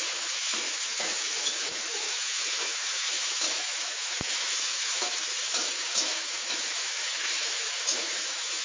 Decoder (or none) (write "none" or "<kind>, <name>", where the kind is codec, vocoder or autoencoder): autoencoder, DAC-VAE